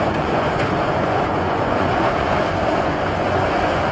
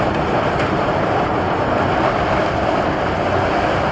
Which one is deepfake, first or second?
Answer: first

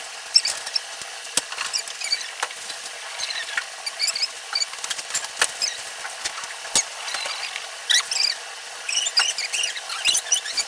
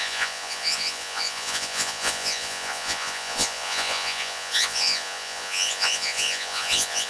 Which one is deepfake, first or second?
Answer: second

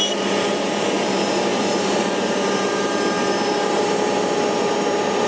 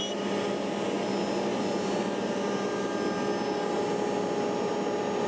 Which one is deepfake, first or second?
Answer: first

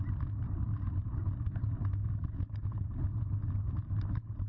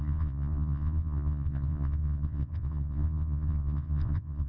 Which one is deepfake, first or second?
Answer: second